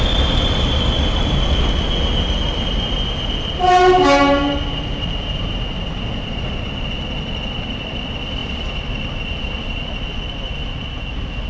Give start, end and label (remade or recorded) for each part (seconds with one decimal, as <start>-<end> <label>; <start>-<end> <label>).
0.0-11.5 recorded